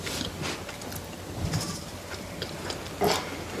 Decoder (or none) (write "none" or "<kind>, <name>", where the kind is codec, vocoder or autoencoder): none